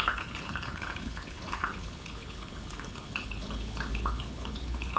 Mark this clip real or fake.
fake